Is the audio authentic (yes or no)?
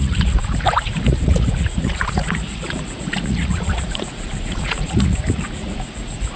no